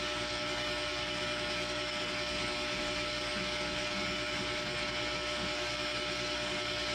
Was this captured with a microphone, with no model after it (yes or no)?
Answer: no